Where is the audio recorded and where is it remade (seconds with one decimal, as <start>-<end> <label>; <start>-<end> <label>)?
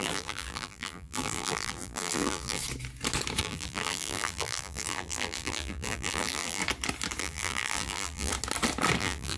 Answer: 0.0-2.6 remade; 2.6-3.4 recorded; 3.4-6.6 remade; 6.6-7.2 recorded; 7.2-8.3 remade; 8.3-9.0 recorded; 9.0-9.4 remade